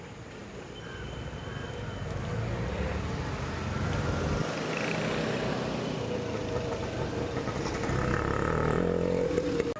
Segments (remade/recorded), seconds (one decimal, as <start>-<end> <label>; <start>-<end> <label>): 0.0-9.8 recorded